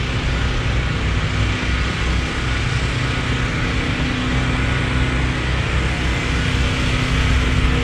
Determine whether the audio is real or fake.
real